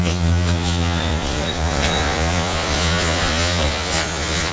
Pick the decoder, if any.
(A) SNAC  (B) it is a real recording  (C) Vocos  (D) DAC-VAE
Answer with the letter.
C